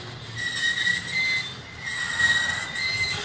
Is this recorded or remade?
recorded